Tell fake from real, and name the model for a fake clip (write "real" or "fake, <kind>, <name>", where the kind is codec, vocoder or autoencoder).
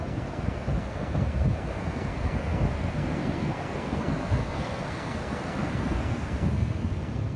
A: fake, codec, SNAC